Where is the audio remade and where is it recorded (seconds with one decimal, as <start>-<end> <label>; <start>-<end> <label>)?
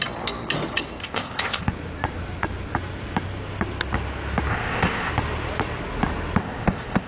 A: 0.0-1.0 recorded; 1.0-1.7 remade; 1.7-4.5 recorded; 4.5-5.1 remade; 5.1-6.4 recorded; 6.4-7.1 remade